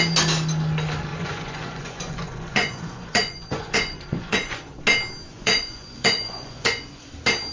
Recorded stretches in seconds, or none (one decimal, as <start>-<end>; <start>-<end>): 0.0-1.1; 4.8-5.3; 7.1-7.5